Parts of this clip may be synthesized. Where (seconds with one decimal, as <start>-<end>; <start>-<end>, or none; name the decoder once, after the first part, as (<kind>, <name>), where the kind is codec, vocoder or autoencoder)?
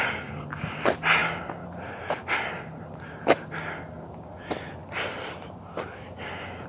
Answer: none